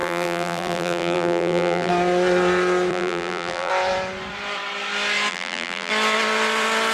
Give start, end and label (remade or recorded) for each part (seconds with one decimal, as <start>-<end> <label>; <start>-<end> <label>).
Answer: 0.0-1.9 remade; 1.9-2.9 recorded; 2.9-3.7 remade; 3.7-5.3 recorded; 5.3-5.9 remade; 5.9-6.9 recorded